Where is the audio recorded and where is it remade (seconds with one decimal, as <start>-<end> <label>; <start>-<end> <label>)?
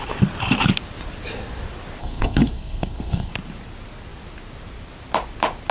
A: 0.0-2.0 recorded; 2.0-3.3 remade; 3.3-5.7 recorded